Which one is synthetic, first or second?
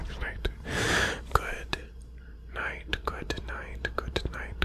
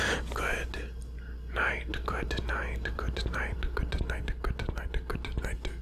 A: first